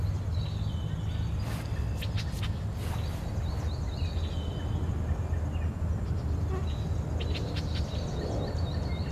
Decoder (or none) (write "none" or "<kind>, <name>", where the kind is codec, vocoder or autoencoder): none